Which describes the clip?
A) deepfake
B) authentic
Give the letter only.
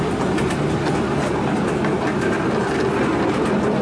B